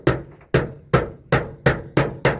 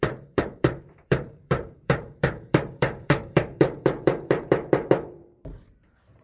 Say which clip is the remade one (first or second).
second